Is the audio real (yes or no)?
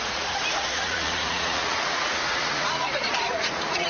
no